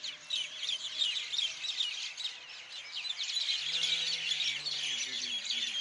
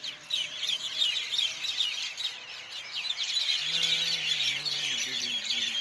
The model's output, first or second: second